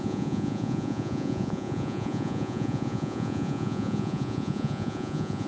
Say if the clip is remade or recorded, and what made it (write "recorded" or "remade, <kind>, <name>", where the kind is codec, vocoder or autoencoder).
remade, vocoder, Vocos